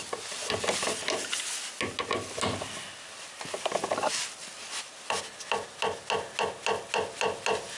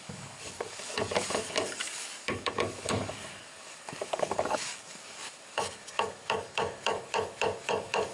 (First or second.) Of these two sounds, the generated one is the second